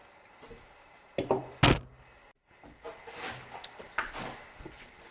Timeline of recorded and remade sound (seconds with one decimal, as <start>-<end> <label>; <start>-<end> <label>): 0.0-5.1 recorded